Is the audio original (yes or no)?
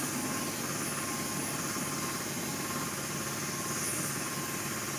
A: yes